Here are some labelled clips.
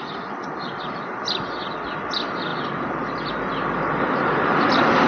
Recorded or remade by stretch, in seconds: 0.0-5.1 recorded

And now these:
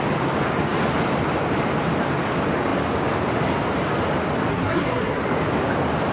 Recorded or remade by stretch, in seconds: 0.0-4.5 recorded; 4.5-5.2 remade; 5.2-6.1 recorded

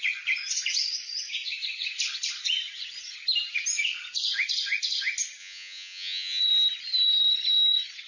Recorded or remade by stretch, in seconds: 0.0-5.4 recorded; 5.4-6.4 remade; 6.4-8.1 recorded

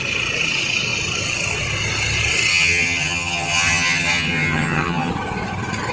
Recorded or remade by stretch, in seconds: 0.0-2.5 recorded; 2.5-5.1 remade; 5.1-5.9 recorded

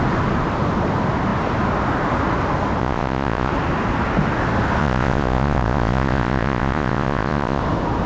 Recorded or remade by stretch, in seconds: 0.0-2.8 recorded; 2.8-3.5 remade; 3.5-4.8 recorded; 4.8-7.6 remade; 7.6-8.1 recorded

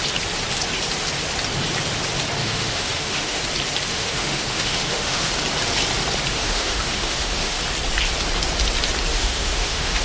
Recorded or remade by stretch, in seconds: 0.0-2.4 recorded; 2.4-3.4 remade; 3.4-3.9 recorded; 3.9-5.3 remade; 5.3-6.3 recorded; 6.3-7.6 remade; 7.6-9.1 recorded; 9.1-10.0 remade